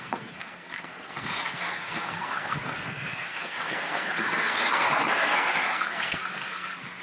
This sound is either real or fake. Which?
fake